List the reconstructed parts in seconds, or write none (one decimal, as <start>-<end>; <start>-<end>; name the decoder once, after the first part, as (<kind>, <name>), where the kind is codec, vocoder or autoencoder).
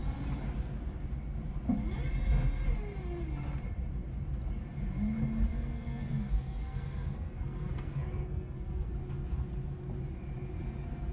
5.5-8.9 (codec, SNAC)